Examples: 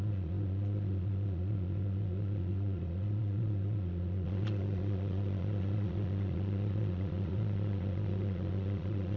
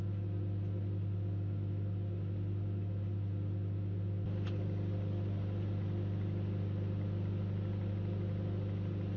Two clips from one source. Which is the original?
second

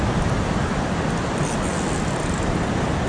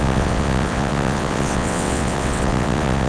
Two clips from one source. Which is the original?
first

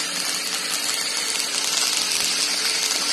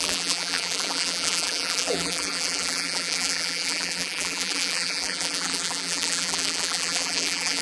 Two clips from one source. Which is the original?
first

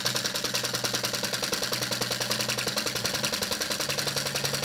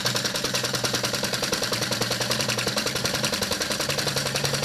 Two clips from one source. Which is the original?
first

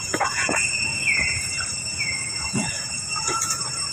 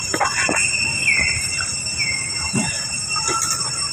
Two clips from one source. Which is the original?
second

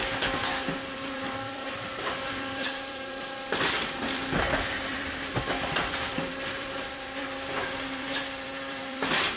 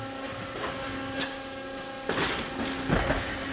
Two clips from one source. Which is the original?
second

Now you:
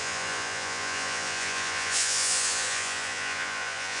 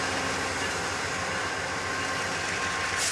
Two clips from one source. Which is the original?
second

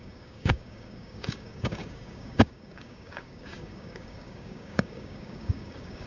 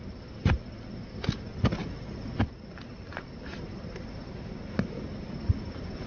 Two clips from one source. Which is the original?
second